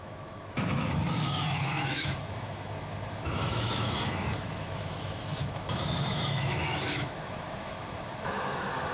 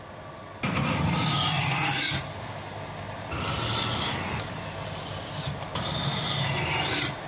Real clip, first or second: second